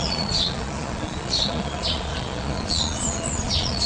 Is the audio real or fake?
fake